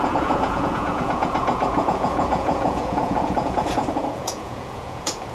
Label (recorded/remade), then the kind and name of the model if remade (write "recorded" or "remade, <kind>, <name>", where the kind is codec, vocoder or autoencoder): remade, vocoder, Vocos